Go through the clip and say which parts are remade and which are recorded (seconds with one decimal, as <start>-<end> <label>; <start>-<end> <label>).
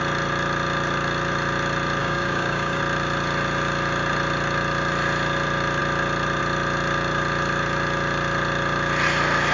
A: 0.0-2.0 recorded; 2.0-2.8 remade; 2.8-9.5 recorded